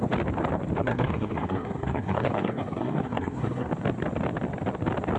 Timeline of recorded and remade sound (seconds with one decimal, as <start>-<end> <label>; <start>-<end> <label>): 0.0-0.8 recorded; 0.8-3.7 remade; 3.7-5.2 recorded